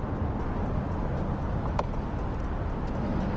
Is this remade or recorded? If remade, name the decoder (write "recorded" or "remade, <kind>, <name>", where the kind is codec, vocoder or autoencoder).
recorded